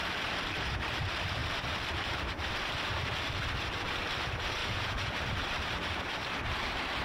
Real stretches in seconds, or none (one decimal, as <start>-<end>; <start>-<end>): 0.0-4.6; 5.1-7.0

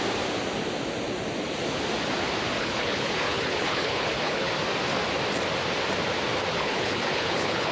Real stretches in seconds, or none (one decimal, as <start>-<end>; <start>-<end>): 0.0-2.6; 4.5-6.5

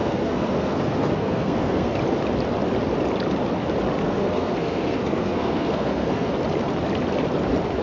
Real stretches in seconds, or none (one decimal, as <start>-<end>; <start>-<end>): 2.0-4.0; 6.3-7.8

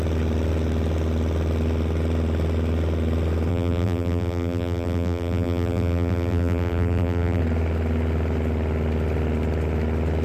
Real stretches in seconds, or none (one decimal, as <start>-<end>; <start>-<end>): 0.0-3.5; 7.4-10.2

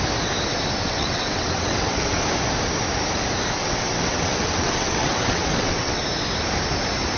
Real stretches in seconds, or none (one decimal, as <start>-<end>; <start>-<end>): 0.0-0.8; 2.2-3.6; 6.0-7.2

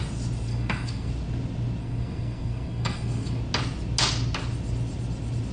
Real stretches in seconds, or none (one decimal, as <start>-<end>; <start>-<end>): 0.0-0.5; 1.1-1.8; 3.4-5.5